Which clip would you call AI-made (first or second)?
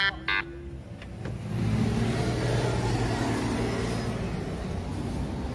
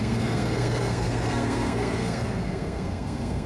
second